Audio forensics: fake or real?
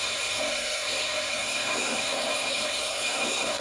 fake